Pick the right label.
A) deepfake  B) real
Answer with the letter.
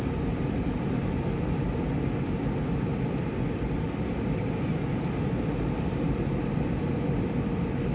B